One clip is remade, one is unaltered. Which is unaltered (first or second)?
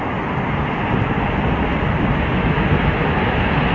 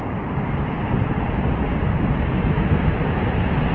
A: first